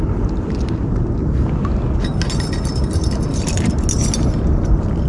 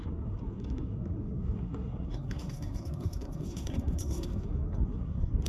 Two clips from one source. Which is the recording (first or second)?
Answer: first